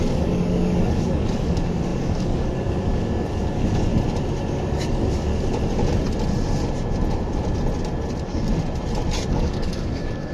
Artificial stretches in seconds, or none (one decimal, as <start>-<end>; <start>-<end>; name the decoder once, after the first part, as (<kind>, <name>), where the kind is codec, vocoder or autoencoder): 0.0-3.9 (codec, DAC); 4.5-5.3; 9.3-10.3